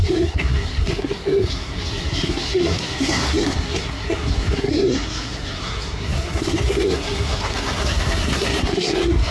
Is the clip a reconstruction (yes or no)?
yes